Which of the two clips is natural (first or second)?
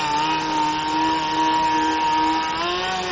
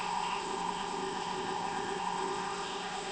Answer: first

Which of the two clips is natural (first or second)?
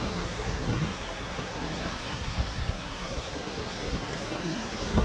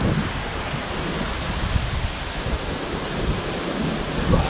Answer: second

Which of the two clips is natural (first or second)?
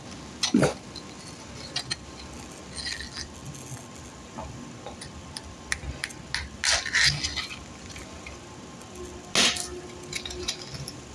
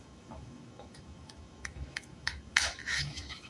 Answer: first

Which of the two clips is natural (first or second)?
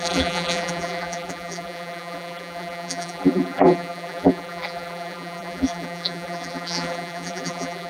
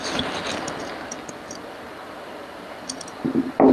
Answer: second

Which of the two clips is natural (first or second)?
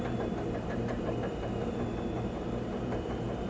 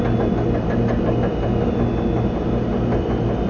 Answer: second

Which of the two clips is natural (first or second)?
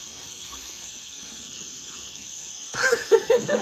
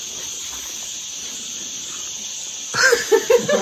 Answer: second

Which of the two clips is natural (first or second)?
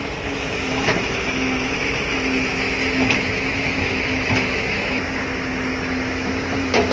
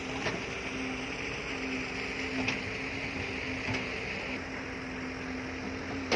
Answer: second